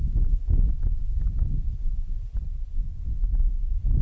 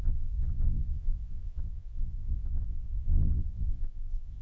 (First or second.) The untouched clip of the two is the first